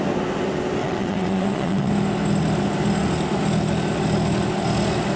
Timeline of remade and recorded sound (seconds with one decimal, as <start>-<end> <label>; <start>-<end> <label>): 0.0-0.8 recorded; 0.8-1.9 remade; 1.9-5.2 recorded